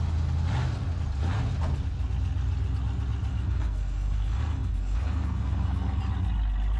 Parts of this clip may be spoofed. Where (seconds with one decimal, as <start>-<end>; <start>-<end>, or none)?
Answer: 3.3-6.0